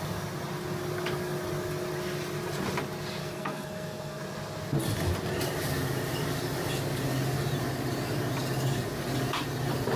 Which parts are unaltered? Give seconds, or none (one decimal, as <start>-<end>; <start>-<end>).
0.0-3.2; 4.2-10.0